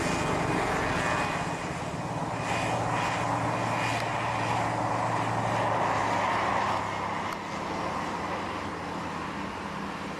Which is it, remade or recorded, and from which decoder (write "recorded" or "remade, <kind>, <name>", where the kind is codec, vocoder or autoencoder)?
recorded